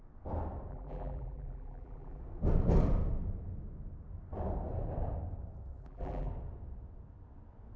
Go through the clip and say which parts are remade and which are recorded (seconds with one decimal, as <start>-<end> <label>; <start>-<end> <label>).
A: 0.0-0.7 recorded; 0.7-2.2 remade; 2.2-5.8 recorded; 5.8-6.3 remade; 6.3-7.8 recorded